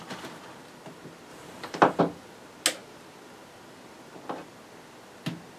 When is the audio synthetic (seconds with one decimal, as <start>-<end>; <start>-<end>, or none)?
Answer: 1.3-2.0